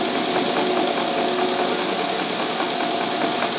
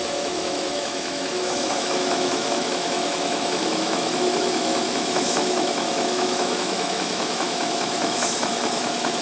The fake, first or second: second